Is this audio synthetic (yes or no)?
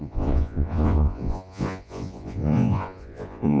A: yes